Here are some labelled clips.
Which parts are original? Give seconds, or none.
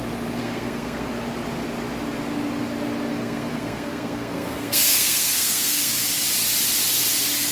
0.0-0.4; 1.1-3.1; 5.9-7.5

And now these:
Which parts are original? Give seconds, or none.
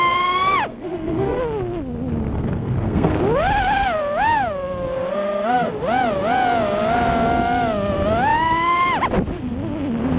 0.0-0.7; 1.4-2.3; 3.1-5.1; 5.7-10.2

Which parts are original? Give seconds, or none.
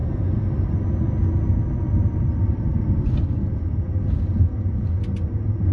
0.0-5.7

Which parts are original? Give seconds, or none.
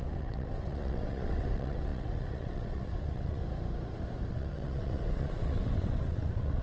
3.4-4.3